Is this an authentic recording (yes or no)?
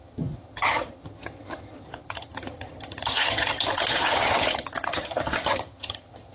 no